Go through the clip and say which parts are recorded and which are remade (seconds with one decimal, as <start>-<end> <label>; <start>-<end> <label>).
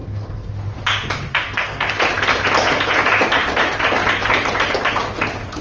0.0-0.5 remade; 0.5-1.3 recorded; 1.3-1.9 remade; 1.9-5.6 recorded